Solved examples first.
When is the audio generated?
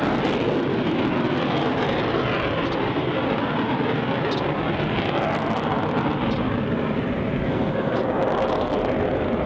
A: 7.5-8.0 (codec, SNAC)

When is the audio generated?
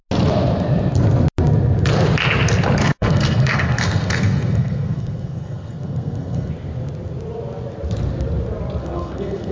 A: 2.8-6.5 (codec, SNAC); 8.8-9.5